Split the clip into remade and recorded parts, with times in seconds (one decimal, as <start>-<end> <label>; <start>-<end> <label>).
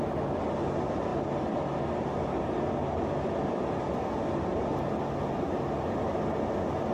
0.0-6.9 recorded